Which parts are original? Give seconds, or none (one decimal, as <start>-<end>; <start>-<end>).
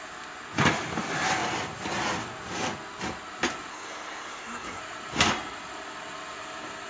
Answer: 0.0-3.7; 4.8-6.9